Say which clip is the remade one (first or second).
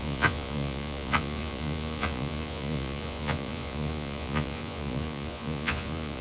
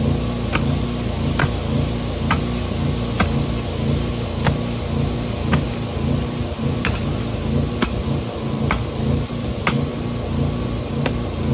first